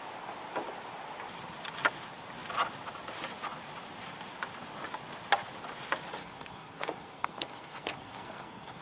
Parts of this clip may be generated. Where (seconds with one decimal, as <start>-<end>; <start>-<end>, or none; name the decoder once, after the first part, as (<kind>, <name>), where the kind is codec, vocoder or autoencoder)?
6.2-8.8 (codec, SNAC)